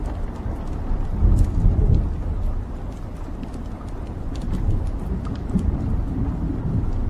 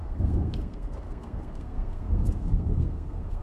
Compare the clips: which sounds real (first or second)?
first